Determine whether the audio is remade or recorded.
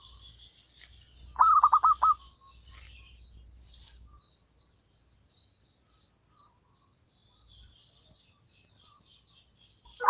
recorded